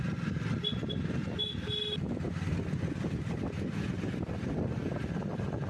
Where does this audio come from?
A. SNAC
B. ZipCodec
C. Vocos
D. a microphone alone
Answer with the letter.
D